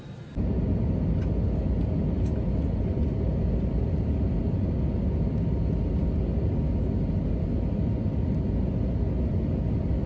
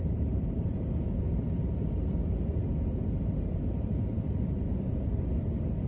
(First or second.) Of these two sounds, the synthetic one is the second